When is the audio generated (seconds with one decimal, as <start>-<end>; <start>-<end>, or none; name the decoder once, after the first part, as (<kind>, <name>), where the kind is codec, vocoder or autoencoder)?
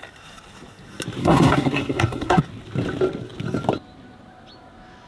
1.2-2.4 (codec, SNAC)